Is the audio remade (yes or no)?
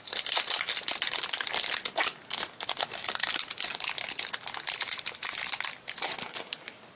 no